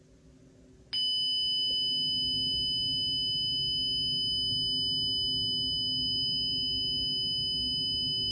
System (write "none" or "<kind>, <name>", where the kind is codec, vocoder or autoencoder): none